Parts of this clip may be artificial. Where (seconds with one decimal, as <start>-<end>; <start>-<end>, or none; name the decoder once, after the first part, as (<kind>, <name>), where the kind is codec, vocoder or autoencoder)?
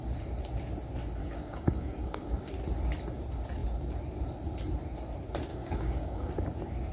1.2-2.5 (codec, DAC); 5.5-6.3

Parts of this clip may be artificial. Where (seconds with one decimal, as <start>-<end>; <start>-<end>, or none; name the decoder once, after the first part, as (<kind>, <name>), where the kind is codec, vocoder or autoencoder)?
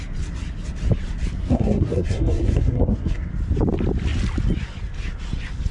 1.4-3.3 (codec, SNAC)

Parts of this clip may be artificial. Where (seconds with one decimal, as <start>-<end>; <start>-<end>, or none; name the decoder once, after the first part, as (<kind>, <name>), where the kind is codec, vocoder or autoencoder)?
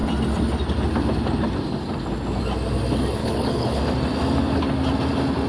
3.2-3.8 (codec, HILCodec)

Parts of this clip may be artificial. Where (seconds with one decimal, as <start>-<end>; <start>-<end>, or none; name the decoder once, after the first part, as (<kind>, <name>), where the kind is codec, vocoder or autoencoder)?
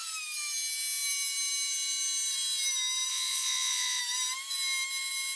3.1-4.0 (vocoder, Vocos)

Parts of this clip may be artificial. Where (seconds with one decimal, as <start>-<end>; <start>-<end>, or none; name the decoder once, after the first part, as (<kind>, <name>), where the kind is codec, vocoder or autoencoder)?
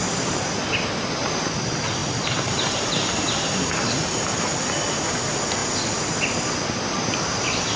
2.0-4.2 (vocoder, BigVGAN v2)